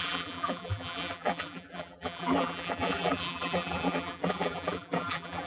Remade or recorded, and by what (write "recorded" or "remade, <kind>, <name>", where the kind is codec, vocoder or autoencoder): remade, vocoder, BigVGAN v2